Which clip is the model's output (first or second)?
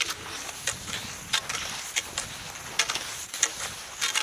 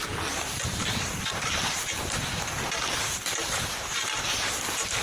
second